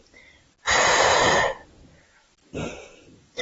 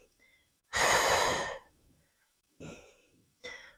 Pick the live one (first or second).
first